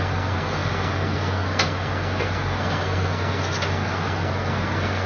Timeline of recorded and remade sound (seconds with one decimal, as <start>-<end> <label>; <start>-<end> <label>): 0.0-5.1 remade